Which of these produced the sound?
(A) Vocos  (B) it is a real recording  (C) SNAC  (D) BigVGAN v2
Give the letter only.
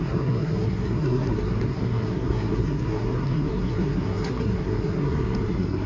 C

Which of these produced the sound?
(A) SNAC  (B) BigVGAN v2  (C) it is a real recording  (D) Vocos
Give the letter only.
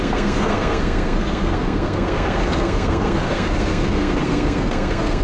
A